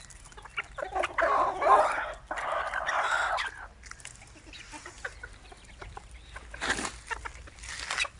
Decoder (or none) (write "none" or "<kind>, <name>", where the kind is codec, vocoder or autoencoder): none